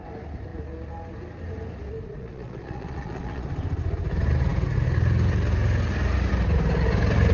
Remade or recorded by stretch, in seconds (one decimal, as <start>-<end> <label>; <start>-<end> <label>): 0.0-2.2 recorded; 2.2-3.5 remade; 3.5-7.3 recorded